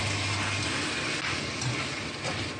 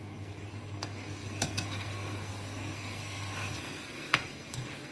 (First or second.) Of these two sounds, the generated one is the second